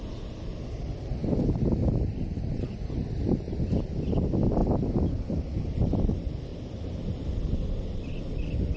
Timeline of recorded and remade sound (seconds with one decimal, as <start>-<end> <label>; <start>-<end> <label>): 0.0-8.8 recorded